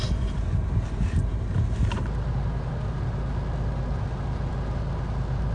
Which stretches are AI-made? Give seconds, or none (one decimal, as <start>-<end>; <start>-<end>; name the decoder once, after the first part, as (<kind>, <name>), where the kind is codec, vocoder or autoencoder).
none